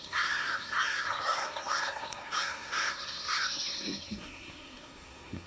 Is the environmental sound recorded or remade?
remade